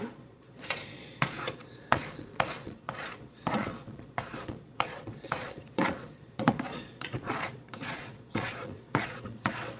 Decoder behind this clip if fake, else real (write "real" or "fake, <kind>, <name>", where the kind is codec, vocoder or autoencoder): fake, vocoder, Vocos